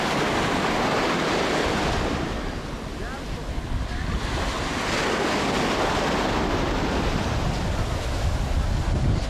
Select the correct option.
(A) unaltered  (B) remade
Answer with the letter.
A